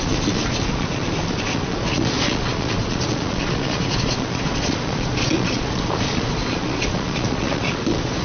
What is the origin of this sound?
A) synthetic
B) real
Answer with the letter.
A